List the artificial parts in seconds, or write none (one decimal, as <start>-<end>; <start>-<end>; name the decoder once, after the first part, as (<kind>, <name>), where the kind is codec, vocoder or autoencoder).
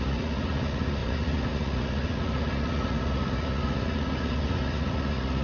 0.0-5.4 (vocoder, Vocos)